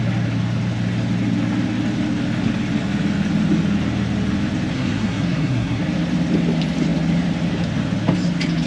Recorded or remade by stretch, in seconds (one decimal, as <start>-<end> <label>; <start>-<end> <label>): 0.0-4.7 recorded; 4.7-5.8 remade; 5.8-8.7 recorded